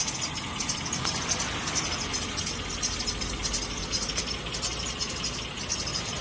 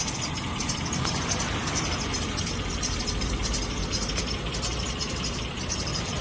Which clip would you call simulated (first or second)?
second